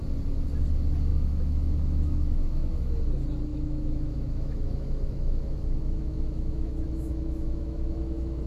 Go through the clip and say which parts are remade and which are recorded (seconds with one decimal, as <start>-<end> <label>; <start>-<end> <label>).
0.0-1.1 recorded; 1.1-3.0 remade; 3.0-3.5 recorded; 3.5-8.5 remade